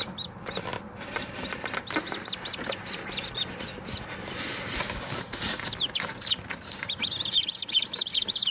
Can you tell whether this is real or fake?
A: real